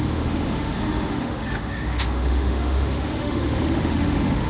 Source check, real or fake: fake